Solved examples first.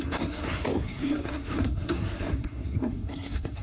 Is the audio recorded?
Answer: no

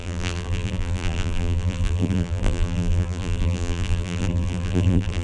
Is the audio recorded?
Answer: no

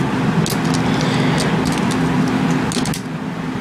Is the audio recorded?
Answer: yes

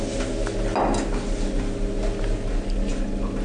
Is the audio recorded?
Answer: yes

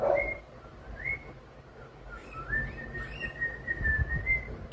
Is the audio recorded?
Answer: yes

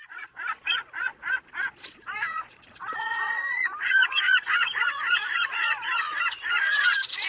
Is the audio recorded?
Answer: no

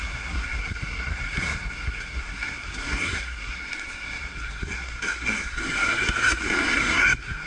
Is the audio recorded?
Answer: no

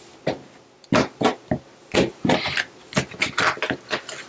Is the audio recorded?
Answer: yes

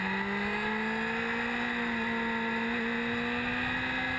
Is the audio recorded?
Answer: yes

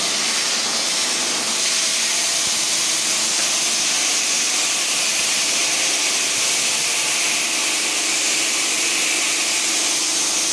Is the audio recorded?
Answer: yes